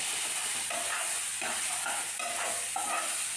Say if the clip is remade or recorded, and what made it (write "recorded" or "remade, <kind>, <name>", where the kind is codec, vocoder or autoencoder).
recorded